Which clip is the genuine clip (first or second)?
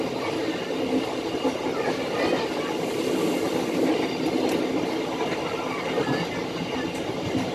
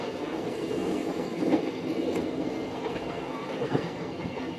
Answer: first